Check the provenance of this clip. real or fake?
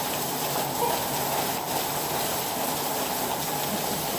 real